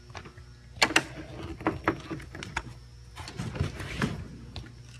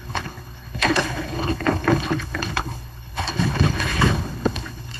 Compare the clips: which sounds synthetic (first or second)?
second